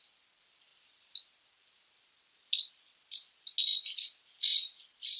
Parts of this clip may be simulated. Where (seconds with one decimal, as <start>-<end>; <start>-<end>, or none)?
none